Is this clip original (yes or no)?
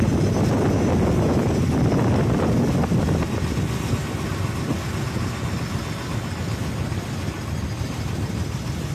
yes